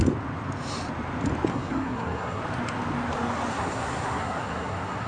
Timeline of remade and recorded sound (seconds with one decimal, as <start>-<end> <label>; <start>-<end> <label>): 0.0-1.5 recorded; 1.5-2.4 remade; 2.4-3.5 recorded; 3.5-5.1 remade